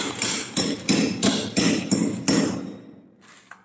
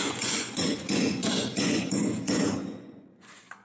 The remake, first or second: second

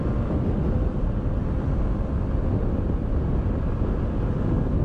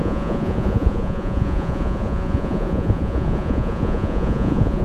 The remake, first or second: second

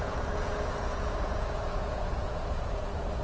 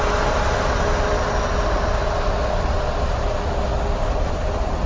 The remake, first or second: first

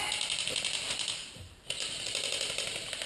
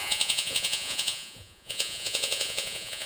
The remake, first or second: second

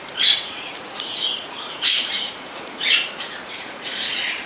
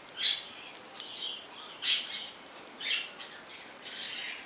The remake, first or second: first